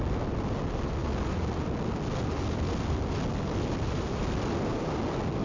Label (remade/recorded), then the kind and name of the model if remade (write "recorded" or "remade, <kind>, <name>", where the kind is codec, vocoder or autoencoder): recorded